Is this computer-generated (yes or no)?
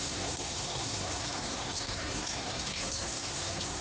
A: yes